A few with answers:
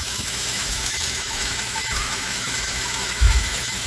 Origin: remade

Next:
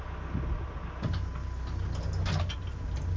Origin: recorded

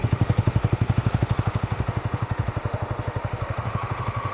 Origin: remade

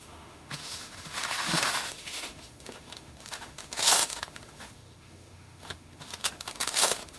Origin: remade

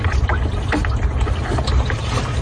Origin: recorded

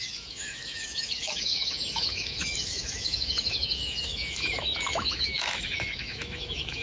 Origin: remade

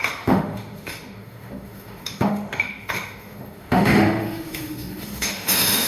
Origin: remade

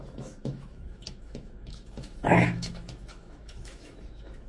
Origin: remade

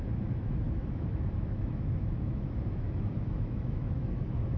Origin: remade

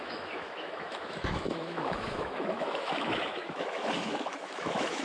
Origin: remade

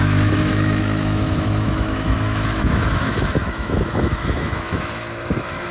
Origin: remade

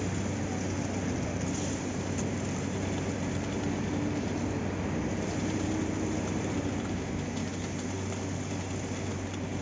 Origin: recorded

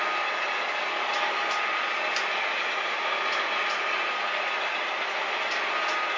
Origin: recorded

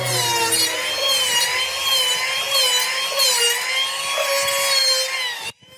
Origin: recorded